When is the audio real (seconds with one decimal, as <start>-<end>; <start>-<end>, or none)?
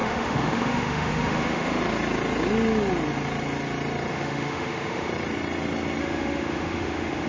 1.8-4.1; 5.1-6.0